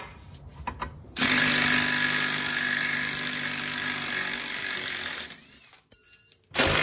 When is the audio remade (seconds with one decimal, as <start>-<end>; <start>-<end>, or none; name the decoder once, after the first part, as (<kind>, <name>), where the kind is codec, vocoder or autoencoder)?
none